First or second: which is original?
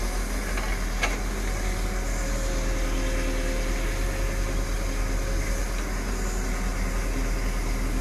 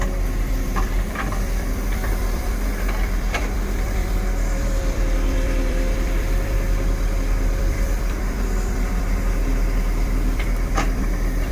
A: first